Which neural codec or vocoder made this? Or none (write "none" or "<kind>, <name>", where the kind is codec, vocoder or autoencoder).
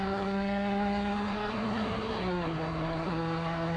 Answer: codec, SNAC